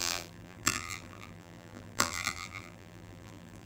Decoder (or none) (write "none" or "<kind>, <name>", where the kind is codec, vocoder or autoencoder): vocoder, BigVGAN v2